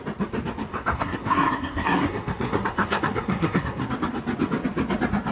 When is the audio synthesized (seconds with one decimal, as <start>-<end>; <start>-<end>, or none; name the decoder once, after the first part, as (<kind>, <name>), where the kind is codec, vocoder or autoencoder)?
0.7-3.9 (codec, SNAC)